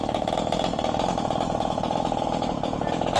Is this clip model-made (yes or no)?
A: no